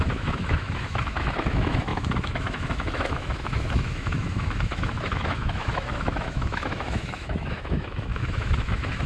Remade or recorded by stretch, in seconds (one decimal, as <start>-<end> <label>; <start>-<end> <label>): 0.0-9.1 remade